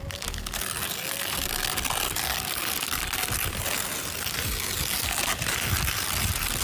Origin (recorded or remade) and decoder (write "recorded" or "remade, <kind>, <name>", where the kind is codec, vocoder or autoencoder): recorded